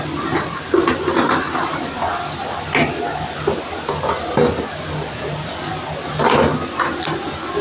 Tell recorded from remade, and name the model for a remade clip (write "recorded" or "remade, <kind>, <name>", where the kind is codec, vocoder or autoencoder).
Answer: recorded